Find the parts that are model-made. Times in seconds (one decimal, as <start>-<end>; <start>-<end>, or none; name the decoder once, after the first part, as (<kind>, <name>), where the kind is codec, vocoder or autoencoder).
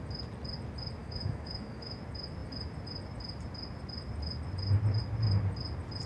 1.0-2.0 (autoencoder, DAC-VAE)